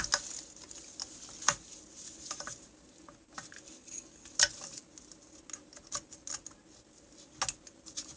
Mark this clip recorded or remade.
recorded